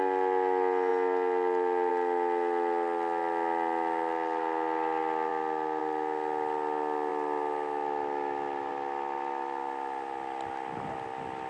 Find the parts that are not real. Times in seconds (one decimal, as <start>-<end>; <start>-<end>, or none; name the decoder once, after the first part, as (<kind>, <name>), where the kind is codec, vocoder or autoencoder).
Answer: none

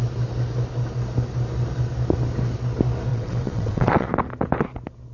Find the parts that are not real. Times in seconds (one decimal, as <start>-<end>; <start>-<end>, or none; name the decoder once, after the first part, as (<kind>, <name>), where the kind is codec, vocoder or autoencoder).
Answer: 3.1-4.1 (vocoder, WaveNeXt)